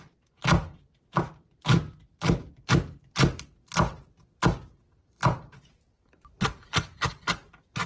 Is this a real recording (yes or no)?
yes